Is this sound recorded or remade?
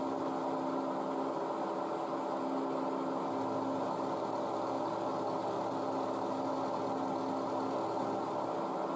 recorded